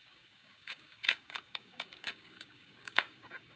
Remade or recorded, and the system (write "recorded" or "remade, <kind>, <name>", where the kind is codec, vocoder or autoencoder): remade, codec, DAC